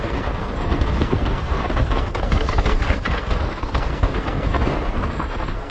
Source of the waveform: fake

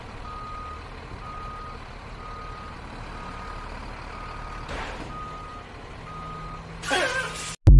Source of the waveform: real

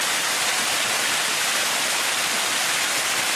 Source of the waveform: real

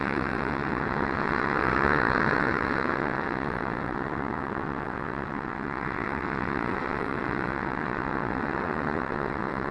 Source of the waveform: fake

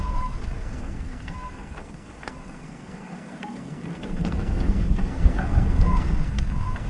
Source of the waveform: fake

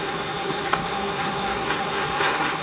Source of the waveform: fake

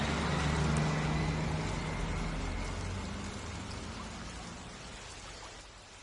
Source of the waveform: real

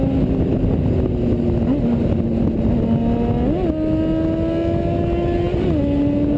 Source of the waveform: real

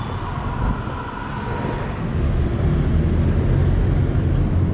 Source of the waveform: real